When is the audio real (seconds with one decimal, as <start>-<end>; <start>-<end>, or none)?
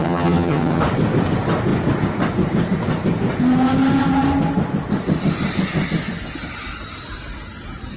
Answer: 0.8-8.0